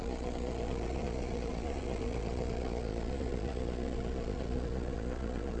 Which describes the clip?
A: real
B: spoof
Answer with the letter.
B